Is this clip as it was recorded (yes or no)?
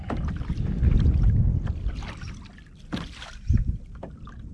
yes